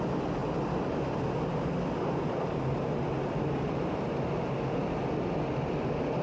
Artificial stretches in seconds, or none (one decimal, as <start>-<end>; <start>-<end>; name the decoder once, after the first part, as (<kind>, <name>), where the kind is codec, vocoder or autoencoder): none